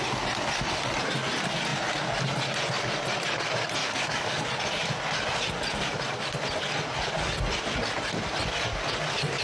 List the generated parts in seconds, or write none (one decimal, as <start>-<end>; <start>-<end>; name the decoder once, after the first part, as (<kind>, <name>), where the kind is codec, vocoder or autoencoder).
3.8-4.4 (codec, DAC)